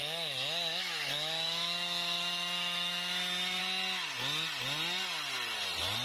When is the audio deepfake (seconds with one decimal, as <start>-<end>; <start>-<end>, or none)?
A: 0.0-3.6